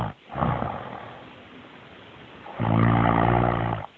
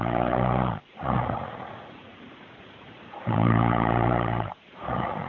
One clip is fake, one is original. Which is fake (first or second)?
second